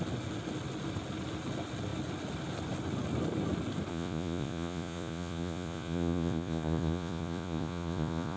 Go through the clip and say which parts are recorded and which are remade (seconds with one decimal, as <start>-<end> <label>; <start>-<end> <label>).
0.0-3.9 recorded; 3.9-8.4 remade